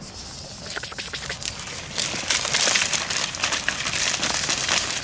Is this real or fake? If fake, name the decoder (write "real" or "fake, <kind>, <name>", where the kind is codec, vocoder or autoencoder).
real